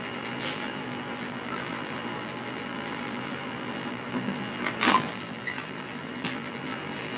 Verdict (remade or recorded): remade